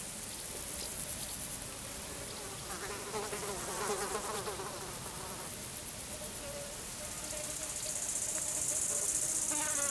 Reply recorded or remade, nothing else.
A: recorded